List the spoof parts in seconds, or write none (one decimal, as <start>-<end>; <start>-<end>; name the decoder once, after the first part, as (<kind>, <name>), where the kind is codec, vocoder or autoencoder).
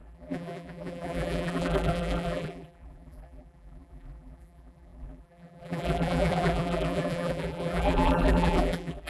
0.0-9.1 (vocoder, BigVGAN v2)